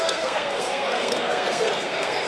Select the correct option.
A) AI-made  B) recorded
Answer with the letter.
A